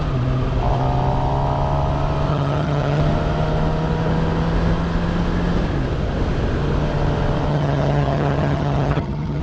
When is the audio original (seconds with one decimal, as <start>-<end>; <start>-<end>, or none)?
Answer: 0.0-2.3; 3.0-7.5